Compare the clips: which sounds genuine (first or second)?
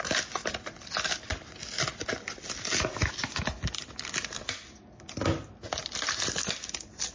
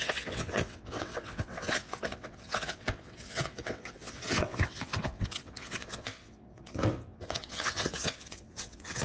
first